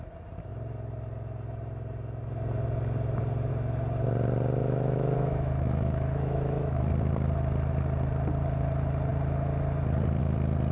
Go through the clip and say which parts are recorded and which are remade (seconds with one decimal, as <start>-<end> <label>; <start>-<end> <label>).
0.0-4.6 recorded; 4.6-6.9 remade; 6.9-10.7 recorded